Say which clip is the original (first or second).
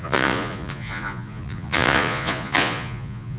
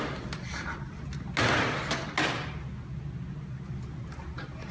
second